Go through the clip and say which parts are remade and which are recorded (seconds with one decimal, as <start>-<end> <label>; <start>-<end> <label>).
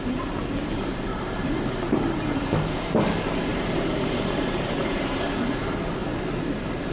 0.0-0.6 recorded; 0.6-2.8 remade; 2.8-3.5 recorded; 3.5-5.2 remade; 5.2-6.9 recorded